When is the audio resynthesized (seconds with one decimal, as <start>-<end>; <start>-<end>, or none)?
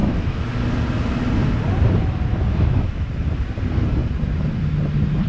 0.0-0.5; 2.3-3.1